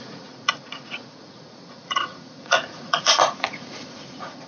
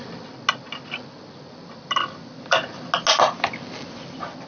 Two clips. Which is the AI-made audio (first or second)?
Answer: first